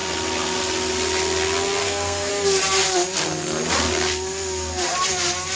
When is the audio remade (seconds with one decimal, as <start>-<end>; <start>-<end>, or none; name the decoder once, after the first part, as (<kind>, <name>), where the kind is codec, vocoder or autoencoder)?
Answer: 1.8-2.3 (codec, SNAC)